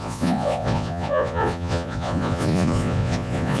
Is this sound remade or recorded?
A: remade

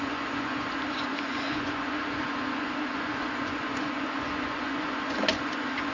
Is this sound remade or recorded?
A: remade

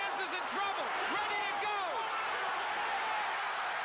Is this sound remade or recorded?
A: recorded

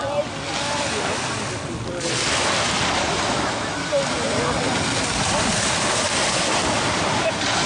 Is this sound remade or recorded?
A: recorded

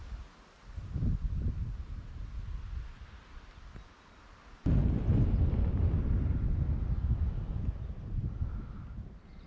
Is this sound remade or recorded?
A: recorded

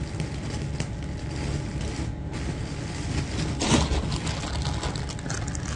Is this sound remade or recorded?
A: recorded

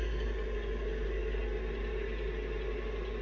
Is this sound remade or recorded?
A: recorded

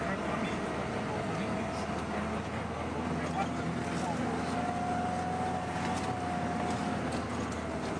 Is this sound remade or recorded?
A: recorded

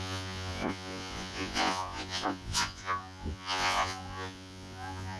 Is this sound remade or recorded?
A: remade